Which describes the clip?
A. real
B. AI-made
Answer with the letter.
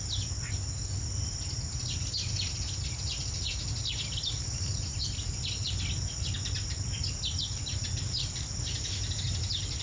A